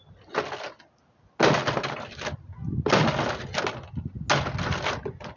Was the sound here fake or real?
real